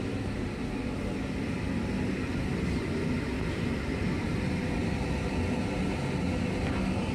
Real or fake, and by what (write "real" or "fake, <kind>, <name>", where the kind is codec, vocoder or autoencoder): real